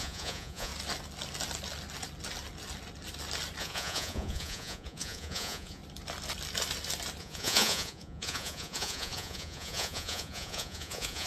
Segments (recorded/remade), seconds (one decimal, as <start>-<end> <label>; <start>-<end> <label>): 0.0-0.7 remade; 0.7-3.6 recorded; 3.6-5.8 remade; 5.8-7.2 recorded; 7.2-11.3 remade